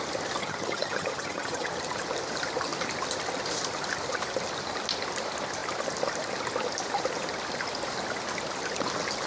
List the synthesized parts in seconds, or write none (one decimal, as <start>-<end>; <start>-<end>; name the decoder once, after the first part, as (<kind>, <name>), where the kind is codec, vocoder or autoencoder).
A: 0.4-1.7 (vocoder, HiFi-GAN)